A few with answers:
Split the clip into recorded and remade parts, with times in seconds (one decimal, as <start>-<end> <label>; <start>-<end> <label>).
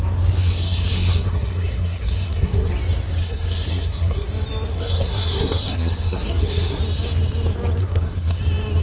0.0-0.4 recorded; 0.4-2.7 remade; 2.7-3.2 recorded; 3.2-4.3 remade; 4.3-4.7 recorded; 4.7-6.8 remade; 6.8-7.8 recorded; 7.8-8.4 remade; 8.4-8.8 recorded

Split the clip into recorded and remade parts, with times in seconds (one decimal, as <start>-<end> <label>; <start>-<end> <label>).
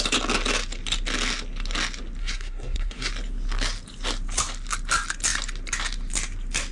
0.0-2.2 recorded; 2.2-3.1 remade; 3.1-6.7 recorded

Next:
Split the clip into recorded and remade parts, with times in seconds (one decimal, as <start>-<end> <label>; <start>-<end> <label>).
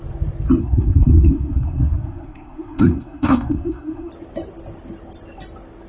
0.0-0.6 recorded; 0.6-4.1 remade; 4.1-5.9 recorded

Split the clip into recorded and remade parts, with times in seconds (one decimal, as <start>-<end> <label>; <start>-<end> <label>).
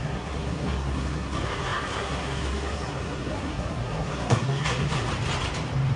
0.0-5.1 remade; 5.1-6.0 recorded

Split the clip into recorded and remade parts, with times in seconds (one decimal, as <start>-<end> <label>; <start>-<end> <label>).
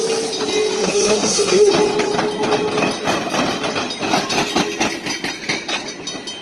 0.0-0.8 recorded; 0.8-1.7 remade; 1.7-6.4 recorded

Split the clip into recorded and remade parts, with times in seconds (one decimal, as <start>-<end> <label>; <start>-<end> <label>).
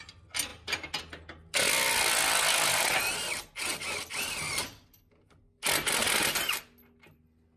0.0-7.6 recorded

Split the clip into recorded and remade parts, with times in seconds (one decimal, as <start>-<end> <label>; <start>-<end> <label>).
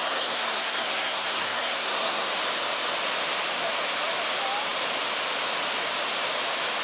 0.0-2.3 remade; 2.3-6.8 recorded